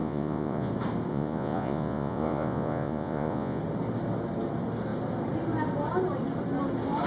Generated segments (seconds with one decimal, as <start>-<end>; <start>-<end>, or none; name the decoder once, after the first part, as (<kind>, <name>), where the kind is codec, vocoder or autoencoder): 0.0-0.7 (vocoder, Vocos); 1.1-3.6